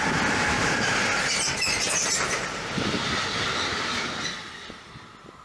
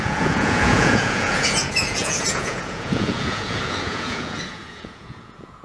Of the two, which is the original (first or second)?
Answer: first